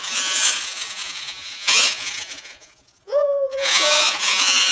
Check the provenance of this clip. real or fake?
fake